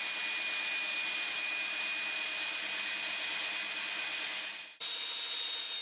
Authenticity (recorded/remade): recorded